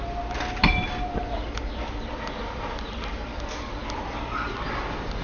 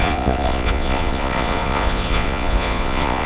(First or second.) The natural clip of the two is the first